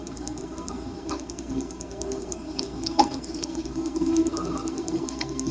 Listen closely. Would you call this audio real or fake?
fake